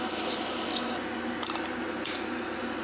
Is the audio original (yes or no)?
yes